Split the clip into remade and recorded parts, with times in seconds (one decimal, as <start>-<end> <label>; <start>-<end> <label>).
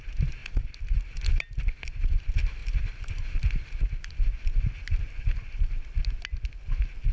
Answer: 0.0-2.6 recorded; 2.6-3.1 remade; 3.1-7.1 recorded